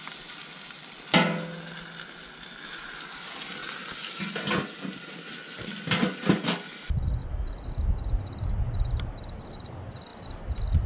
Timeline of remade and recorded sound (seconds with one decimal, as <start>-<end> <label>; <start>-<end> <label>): 0.0-10.9 recorded